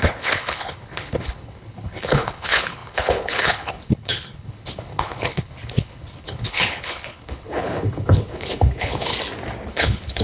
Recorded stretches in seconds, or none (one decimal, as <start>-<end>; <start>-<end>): 9.1-9.7